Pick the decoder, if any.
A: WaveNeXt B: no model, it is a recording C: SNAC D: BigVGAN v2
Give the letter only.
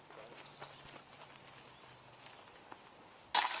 B